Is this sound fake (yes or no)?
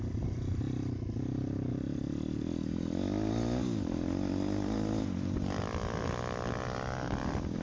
no